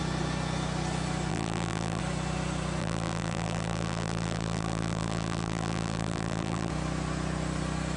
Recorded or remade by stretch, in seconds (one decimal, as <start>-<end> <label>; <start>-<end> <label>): 0.0-1.3 recorded; 1.3-2.0 remade; 2.0-2.8 recorded; 2.8-6.7 remade; 6.7-8.0 recorded